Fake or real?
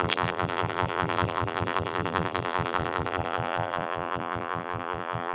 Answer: fake